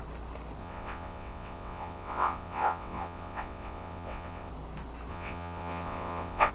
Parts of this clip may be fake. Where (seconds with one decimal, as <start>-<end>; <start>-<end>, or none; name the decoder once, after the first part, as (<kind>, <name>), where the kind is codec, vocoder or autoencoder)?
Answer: 0.6-4.5 (vocoder, WaveNeXt); 5.1-6.5